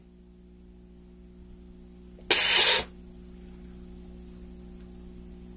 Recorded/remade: recorded